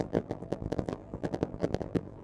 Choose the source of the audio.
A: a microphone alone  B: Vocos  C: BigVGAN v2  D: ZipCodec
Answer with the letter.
C